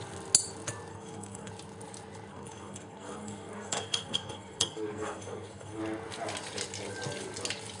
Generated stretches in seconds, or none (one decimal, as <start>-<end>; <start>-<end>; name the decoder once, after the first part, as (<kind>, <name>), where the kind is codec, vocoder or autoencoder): 0.9-1.5 (codec, SNAC); 2.3-5.8